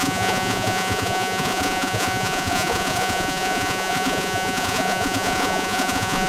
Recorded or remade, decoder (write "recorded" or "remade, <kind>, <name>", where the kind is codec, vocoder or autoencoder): remade, vocoder, Vocos